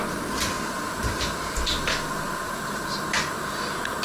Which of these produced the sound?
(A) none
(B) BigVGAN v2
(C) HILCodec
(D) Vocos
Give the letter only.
A